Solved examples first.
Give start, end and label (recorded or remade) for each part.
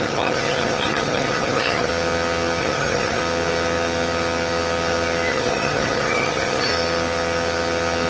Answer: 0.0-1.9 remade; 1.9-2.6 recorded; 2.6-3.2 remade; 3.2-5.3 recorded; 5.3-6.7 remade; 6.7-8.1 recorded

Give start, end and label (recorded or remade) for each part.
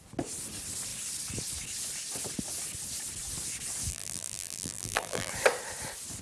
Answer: 0.0-3.9 recorded; 3.9-5.3 remade; 5.3-6.2 recorded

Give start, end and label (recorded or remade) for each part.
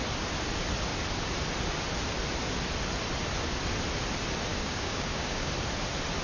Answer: 0.0-4.5 recorded; 4.5-5.5 remade; 5.5-6.2 recorded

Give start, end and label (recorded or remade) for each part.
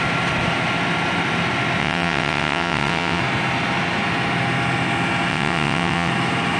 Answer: 0.0-1.8 recorded; 1.8-3.2 remade; 3.2-5.3 recorded; 5.3-6.1 remade; 6.1-6.6 recorded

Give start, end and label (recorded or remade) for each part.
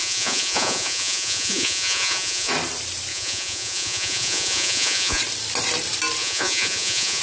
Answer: 0.0-2.5 remade; 2.5-3.1 recorded; 3.1-5.2 remade; 5.2-6.2 recorded; 6.2-7.2 remade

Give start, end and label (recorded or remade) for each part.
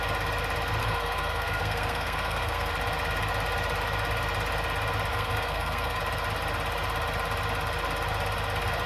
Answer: 0.0-0.8 recorded; 0.8-2.7 remade; 2.7-5.1 recorded; 5.1-6.0 remade; 6.0-8.9 recorded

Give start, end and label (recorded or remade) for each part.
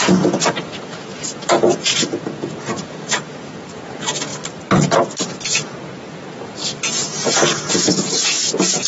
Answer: 0.0-4.3 remade; 4.3-5.6 recorded; 5.6-6.6 remade; 6.6-7.7 recorded; 7.7-8.9 remade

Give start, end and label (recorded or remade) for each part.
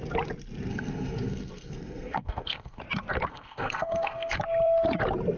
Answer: 0.0-0.7 recorded; 0.7-2.8 remade; 2.8-3.3 recorded; 3.3-4.4 remade; 4.4-5.4 recorded